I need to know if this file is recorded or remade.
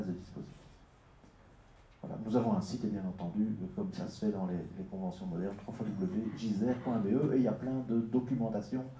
recorded